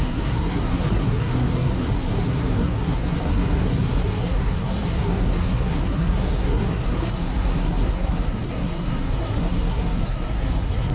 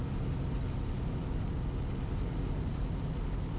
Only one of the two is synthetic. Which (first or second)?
first